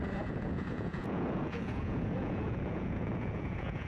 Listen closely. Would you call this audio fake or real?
fake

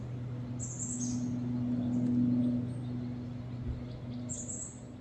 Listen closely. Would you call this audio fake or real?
real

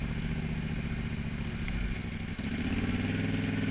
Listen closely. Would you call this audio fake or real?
real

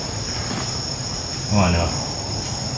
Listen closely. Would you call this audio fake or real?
real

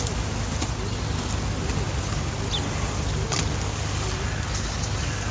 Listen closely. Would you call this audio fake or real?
real